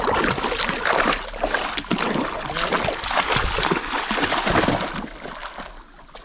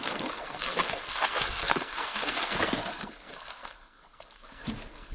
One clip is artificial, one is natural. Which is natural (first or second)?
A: first